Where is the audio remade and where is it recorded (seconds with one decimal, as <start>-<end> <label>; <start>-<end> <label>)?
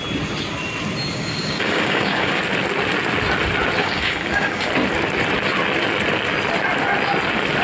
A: 0.0-1.1 recorded; 1.1-2.4 remade; 2.4-3.8 recorded; 3.8-4.7 remade; 4.7-7.6 recorded